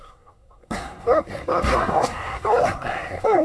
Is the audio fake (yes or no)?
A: yes